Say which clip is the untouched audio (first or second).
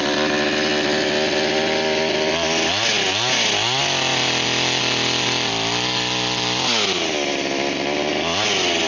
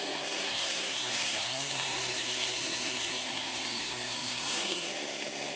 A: first